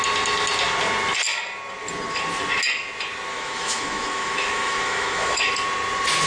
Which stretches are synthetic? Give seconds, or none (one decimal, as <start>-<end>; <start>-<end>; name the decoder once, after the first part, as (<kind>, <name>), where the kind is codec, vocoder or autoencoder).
3.3-5.5 (autoencoder, DAC-VAE)